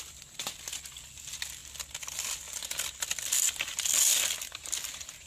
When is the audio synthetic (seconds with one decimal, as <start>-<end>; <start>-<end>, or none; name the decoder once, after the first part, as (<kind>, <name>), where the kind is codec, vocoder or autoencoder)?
none